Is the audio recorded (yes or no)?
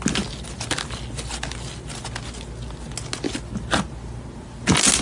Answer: yes